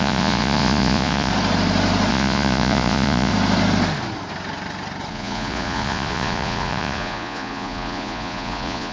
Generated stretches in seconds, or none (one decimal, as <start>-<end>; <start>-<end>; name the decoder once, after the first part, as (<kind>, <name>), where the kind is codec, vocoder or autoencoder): 0.0-1.3 (vocoder, Vocos); 2.1-3.3; 5.1-8.9